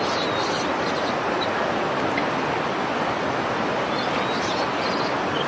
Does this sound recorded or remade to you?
recorded